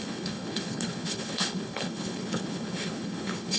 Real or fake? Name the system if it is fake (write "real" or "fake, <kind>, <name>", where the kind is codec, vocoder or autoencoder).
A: fake, codec, HILCodec